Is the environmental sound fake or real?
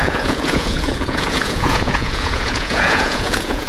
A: fake